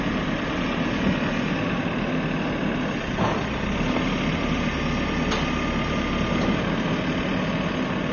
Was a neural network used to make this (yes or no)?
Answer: no